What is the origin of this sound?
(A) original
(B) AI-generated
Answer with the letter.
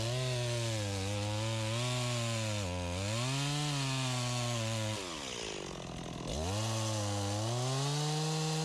A